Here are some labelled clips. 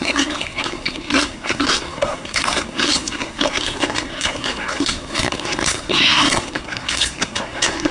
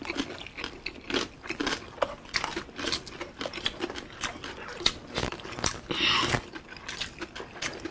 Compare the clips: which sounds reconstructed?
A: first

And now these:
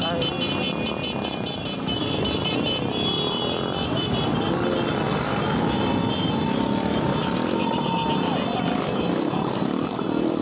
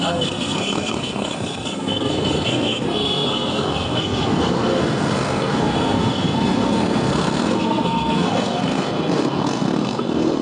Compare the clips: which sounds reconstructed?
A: second